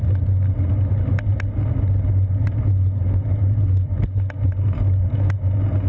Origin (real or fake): real